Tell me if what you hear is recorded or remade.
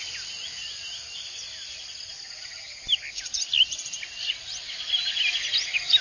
recorded